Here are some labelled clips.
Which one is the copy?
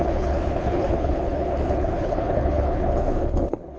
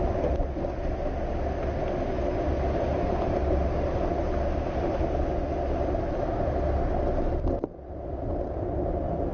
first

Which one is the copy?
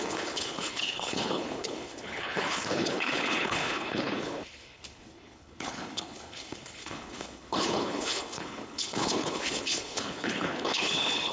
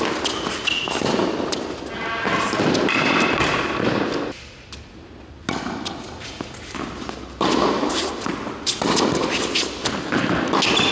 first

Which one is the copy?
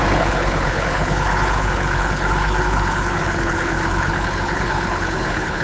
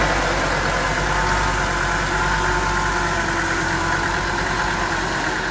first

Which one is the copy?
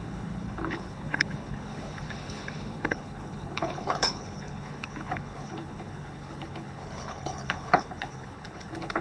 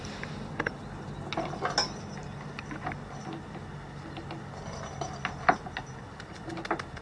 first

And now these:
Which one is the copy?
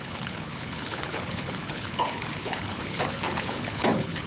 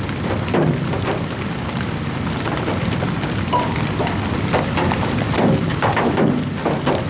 first